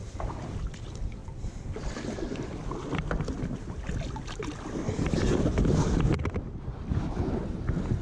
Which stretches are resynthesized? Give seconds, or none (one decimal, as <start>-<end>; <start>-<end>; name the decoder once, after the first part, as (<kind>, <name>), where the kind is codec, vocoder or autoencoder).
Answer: none

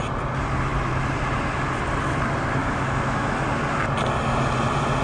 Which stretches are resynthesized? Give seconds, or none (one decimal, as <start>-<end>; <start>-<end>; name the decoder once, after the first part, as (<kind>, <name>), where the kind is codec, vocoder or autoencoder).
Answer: 2.6-3.4 (autoencoder, DAC-VAE)

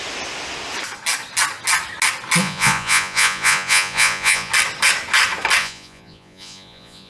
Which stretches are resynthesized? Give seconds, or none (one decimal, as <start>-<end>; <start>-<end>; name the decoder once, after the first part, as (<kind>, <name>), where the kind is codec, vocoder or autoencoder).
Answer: 2.4-4.5 (vocoder, Vocos); 5.6-7.1

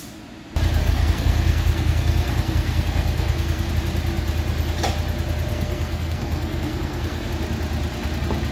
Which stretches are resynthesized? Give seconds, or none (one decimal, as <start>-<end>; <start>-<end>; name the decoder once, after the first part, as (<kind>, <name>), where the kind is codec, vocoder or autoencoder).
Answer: 0.8-3.7 (codec, SNAC); 5.5-7.3

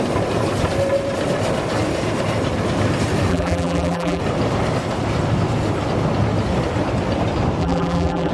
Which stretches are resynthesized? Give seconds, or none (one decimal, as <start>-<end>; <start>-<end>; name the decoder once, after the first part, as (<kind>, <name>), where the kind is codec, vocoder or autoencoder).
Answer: 3.3-4.2 (vocoder, BigVGAN v2); 7.6-8.3

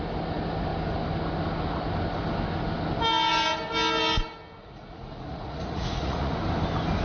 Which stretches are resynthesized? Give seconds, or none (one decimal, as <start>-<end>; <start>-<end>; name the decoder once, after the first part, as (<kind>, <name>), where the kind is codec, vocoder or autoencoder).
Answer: 4.6-6.3 (vocoder, Vocos)

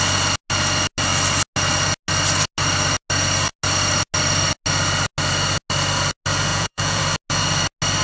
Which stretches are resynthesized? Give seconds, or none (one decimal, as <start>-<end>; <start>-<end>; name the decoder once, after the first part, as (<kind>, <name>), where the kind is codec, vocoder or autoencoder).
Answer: 6.5-7.0 (vocoder, Vocos)